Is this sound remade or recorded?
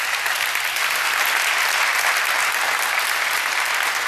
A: recorded